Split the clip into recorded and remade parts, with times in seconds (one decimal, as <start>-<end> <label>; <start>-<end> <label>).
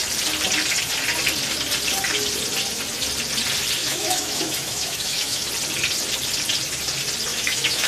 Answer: 0.0-3.8 recorded; 3.8-5.5 remade; 5.5-7.3 recorded; 7.3-7.9 remade